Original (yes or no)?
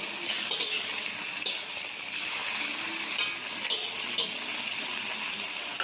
yes